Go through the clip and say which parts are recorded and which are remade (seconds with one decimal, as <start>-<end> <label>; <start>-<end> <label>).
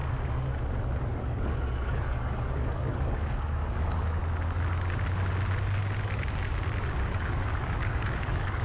0.0-1.0 recorded; 1.0-4.2 remade; 4.2-7.1 recorded; 7.1-8.6 remade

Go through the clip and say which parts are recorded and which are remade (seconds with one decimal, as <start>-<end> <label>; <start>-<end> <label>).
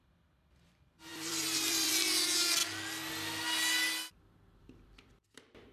0.0-2.6 remade; 2.6-4.6 recorded; 4.6-5.7 remade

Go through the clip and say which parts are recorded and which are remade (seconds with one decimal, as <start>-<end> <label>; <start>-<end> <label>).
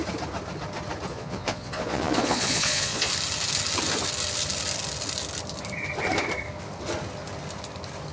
0.0-1.1 recorded; 1.1-3.1 remade; 3.1-8.1 recorded